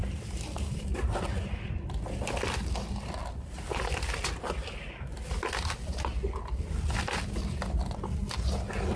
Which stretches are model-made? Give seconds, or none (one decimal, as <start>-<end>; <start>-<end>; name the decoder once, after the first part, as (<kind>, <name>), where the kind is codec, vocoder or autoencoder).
none